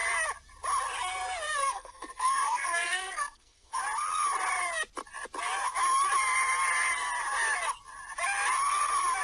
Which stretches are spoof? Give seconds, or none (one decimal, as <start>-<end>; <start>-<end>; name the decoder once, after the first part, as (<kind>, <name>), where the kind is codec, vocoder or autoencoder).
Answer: 1.6-3.8 (codec, SNAC)